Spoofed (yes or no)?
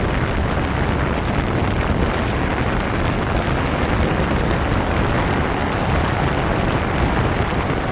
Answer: no